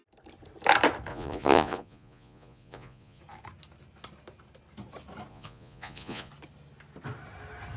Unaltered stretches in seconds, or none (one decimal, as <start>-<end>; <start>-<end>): 0.0-1.1; 3.2-5.3; 6.3-7.8

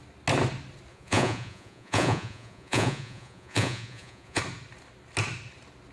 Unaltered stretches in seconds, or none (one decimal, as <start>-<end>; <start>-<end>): 0.0-0.9; 4.4-5.9

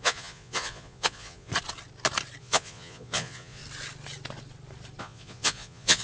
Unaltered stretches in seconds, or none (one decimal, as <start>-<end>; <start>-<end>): 1.5-2.4; 3.6-5.0